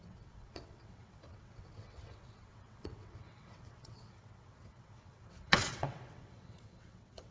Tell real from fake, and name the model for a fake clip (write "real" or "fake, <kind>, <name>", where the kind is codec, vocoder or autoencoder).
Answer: fake, vocoder, WaveNeXt